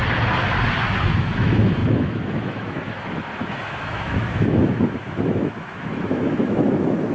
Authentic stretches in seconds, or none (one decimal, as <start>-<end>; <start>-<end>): 0.0-1.0